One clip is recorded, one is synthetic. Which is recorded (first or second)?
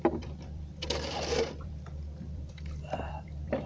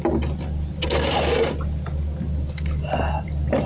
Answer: second